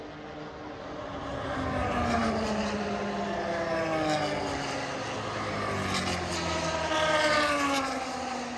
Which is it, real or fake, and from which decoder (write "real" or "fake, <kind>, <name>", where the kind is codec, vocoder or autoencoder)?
real